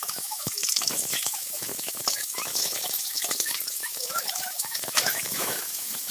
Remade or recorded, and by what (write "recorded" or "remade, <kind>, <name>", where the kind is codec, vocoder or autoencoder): remade, autoencoder, DAC-VAE